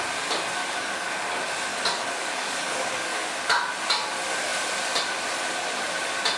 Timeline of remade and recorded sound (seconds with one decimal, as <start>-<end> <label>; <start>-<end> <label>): 0.0-0.6 recorded; 0.6-1.1 remade; 1.1-1.7 recorded; 1.7-3.3 remade; 3.3-6.4 recorded